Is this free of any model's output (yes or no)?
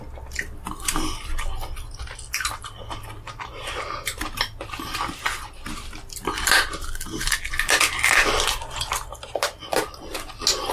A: yes